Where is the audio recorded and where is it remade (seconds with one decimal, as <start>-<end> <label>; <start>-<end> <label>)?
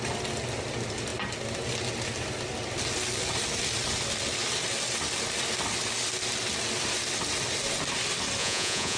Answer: 0.0-8.4 recorded; 8.4-9.0 remade